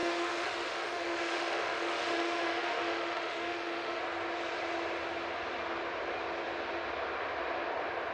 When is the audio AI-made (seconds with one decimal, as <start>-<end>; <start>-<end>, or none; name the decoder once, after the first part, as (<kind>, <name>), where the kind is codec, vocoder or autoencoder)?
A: 0.0-4.0 (autoencoder, DAC-VAE)